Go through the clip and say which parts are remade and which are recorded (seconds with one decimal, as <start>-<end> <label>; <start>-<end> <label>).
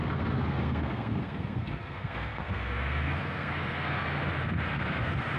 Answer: 0.0-4.0 remade; 4.0-4.7 recorded; 4.7-5.4 remade